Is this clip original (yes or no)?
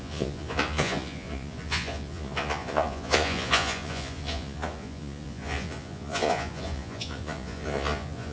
no